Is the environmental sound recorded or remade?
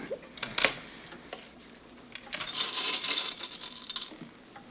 recorded